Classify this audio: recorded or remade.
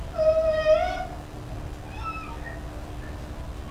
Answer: recorded